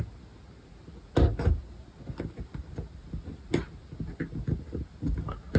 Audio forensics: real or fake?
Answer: real